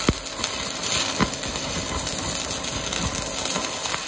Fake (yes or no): no